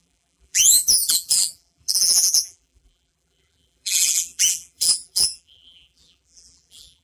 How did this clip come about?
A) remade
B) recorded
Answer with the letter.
A